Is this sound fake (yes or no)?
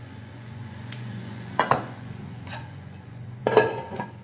yes